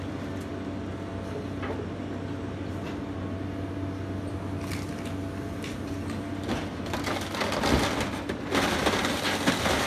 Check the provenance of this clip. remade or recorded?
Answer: recorded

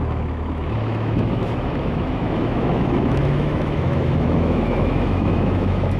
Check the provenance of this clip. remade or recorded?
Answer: remade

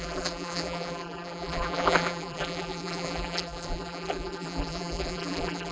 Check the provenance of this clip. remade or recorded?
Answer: remade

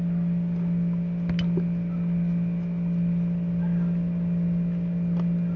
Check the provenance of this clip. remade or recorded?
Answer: recorded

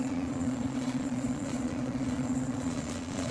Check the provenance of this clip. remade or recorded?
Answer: remade